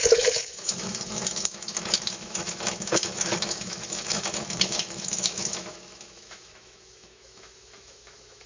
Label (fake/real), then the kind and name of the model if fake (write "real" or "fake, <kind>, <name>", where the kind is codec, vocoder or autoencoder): fake, autoencoder, DAC-VAE